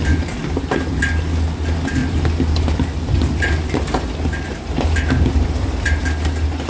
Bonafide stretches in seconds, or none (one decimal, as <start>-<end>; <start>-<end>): 0.0-2.0; 6.0-6.7